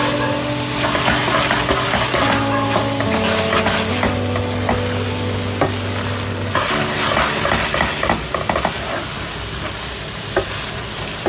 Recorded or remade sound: recorded